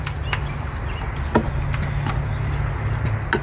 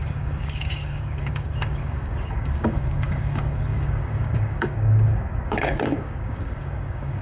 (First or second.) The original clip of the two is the first